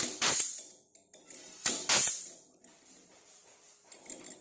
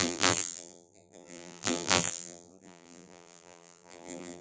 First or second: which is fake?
second